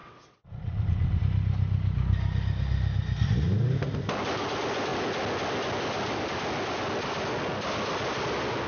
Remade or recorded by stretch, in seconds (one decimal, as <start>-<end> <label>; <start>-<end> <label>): 0.0-1.2 remade; 1.2-8.7 recorded